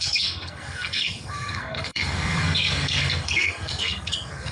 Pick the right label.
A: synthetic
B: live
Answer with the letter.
A